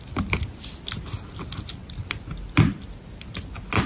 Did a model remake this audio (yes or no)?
no